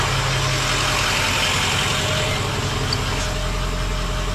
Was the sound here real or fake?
real